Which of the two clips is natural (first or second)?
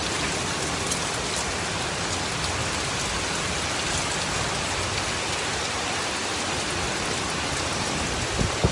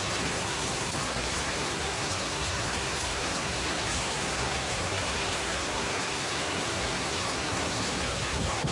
first